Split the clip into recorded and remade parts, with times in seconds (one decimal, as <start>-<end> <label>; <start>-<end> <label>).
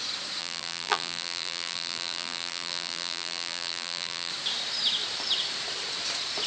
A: 0.0-0.4 recorded; 0.4-4.3 remade; 4.3-6.5 recorded